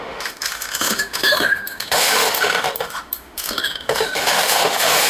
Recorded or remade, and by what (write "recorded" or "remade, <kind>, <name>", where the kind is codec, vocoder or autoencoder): remade, autoencoder, DAC-VAE